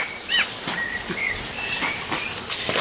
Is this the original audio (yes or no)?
no